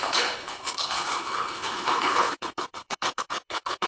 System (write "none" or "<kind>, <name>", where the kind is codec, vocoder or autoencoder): codec, HILCodec